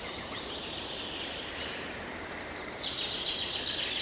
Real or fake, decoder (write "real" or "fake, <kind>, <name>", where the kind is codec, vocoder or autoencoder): fake, vocoder, BigVGAN v2